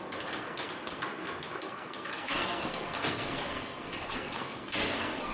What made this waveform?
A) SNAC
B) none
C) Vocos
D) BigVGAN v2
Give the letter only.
A